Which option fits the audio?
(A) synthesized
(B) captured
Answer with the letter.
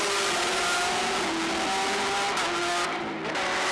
B